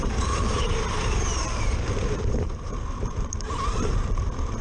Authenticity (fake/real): fake